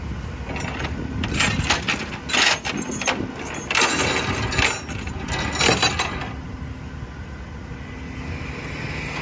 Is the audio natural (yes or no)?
yes